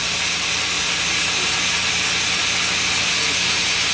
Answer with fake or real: real